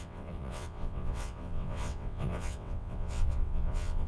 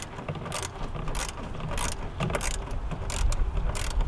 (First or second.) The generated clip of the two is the first